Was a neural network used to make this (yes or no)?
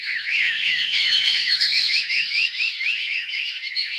yes